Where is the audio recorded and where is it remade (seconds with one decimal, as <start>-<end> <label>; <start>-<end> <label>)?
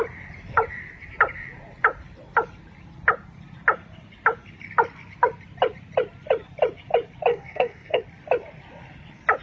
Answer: 0.0-7.3 recorded; 7.3-8.0 remade; 8.0-9.4 recorded